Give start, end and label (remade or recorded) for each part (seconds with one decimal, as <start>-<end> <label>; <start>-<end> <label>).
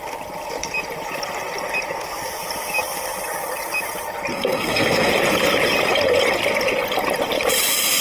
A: 0.0-4.3 recorded; 4.3-5.1 remade; 5.1-8.0 recorded